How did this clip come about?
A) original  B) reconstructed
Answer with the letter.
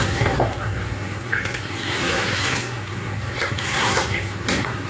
B